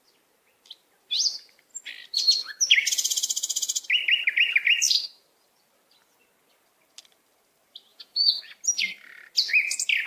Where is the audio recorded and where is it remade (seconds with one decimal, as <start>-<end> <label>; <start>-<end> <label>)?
0.0-7.9 recorded; 7.9-8.4 remade; 8.4-10.1 recorded

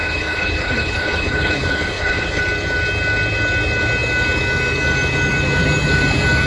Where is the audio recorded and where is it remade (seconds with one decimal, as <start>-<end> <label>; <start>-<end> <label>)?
0.0-2.4 remade; 2.4-6.5 recorded